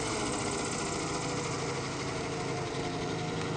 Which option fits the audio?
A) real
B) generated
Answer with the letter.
A